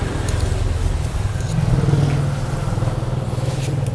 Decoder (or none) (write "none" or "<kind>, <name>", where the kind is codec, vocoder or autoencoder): none